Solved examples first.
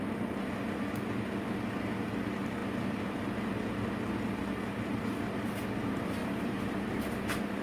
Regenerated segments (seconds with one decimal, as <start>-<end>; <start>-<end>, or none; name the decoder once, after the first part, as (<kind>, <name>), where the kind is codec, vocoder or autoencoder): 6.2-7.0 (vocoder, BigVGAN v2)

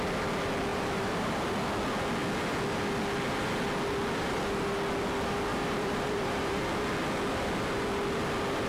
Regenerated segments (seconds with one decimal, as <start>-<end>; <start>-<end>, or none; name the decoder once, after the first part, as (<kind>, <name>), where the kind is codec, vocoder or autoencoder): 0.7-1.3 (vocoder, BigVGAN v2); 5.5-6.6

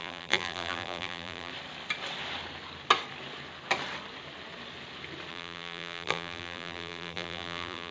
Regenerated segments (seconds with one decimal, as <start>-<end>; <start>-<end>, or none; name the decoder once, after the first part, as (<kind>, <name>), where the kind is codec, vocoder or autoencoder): 0.0-1.5 (vocoder, BigVGAN v2); 5.3-7.9